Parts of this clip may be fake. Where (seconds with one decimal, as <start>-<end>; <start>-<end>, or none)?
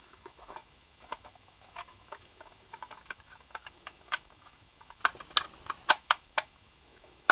0.0-5.0; 5.9-7.3